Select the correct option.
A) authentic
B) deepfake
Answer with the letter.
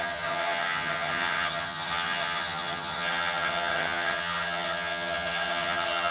B